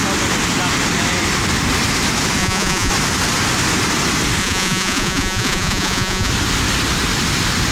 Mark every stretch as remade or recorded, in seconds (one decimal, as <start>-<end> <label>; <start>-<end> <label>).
0.0-2.4 recorded; 2.4-2.9 remade; 2.9-4.4 recorded; 4.4-6.3 remade; 6.3-7.7 recorded